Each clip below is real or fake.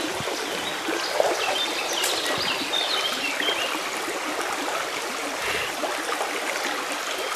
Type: real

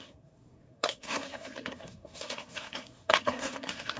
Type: fake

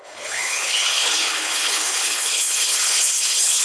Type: fake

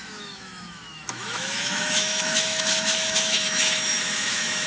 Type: fake